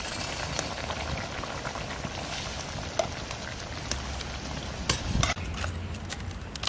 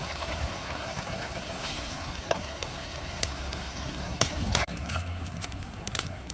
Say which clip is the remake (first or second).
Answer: second